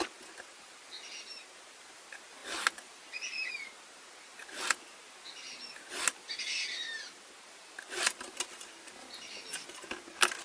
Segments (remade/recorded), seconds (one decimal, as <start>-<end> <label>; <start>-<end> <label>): 0.0-10.4 recorded